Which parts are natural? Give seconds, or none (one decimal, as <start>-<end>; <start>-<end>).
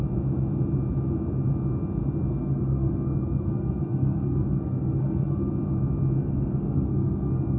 0.0-2.3; 5.5-6.2